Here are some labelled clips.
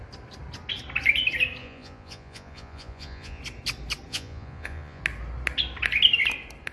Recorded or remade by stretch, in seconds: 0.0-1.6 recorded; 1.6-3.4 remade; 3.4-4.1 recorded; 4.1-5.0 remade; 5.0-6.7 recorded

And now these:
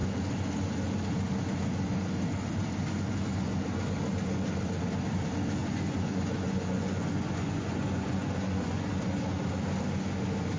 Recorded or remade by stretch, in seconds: 0.0-5.6 recorded; 5.6-8.9 remade; 8.9-10.6 recorded